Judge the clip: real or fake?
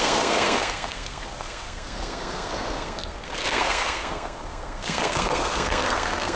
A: fake